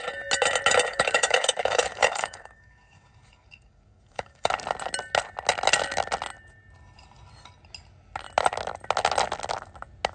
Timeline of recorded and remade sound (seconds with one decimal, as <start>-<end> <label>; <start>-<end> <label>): 0.0-0.9 recorded; 0.9-4.5 remade; 4.5-10.1 recorded